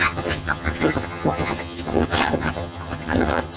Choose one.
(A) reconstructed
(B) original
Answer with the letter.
A